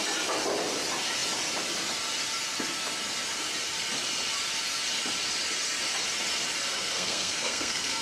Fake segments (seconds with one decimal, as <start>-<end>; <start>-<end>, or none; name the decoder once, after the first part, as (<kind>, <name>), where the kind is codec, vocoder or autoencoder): 6.7-8.0 (codec, SNAC)